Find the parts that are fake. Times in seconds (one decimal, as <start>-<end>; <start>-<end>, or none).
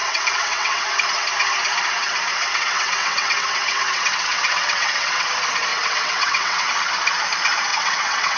0.0-0.9; 2.3-5.3; 5.7-6.7; 7.7-8.4